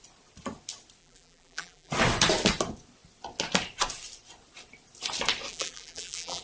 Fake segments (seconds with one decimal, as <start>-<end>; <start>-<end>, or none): 1.0-1.9; 5.5-6.4